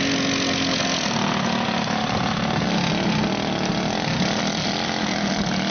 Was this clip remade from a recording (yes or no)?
no